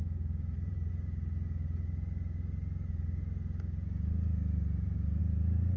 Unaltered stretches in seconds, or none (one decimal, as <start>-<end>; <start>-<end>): 0.9-5.2